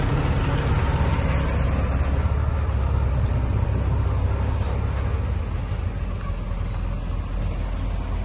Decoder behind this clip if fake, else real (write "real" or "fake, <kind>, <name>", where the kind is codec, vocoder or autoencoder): real